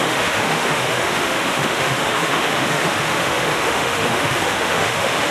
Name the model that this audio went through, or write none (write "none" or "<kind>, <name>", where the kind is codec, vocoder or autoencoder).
autoencoder, DAC-VAE